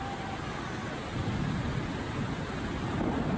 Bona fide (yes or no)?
yes